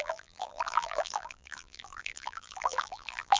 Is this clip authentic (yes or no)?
no